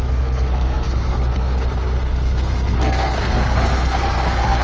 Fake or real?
fake